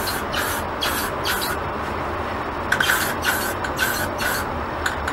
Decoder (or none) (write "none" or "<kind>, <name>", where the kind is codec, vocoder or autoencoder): none